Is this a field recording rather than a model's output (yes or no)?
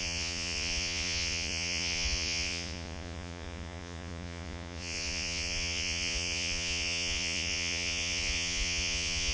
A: no